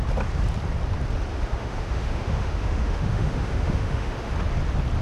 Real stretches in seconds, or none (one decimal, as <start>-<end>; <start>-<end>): 0.0-1.3; 4.3-5.0